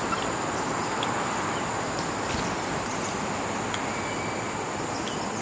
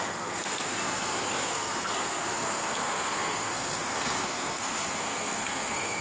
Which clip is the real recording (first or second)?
first